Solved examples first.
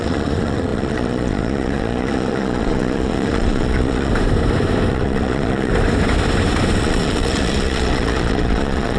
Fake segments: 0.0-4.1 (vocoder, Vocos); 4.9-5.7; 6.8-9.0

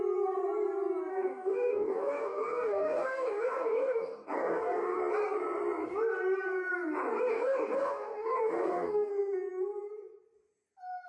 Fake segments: 1.1-5.0 (codec, DAC); 7.3-9.1

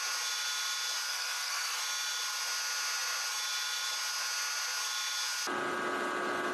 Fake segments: 1.1-1.8 (codec, SNAC)

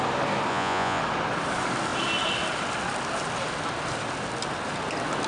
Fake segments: 0.5-1.0 (vocoder, Vocos)

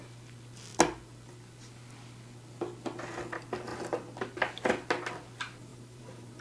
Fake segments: 5.7-6.4 (vocoder, BigVGAN v2)